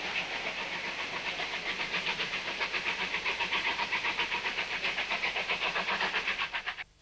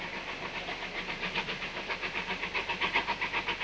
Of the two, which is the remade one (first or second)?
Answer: first